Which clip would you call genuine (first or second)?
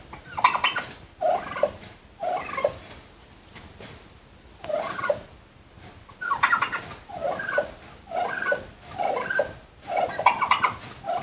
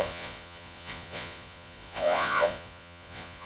first